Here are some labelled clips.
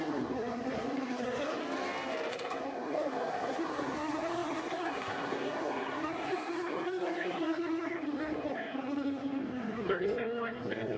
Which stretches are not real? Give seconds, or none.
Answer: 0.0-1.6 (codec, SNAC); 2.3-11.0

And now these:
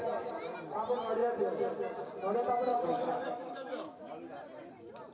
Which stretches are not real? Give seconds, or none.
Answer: 2.7-4.1 (autoencoder, DAC-VAE)